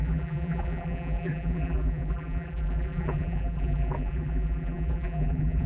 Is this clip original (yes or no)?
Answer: no